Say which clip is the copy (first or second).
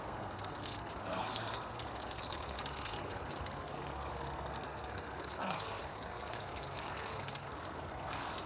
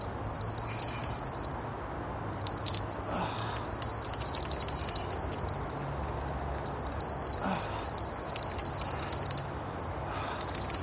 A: first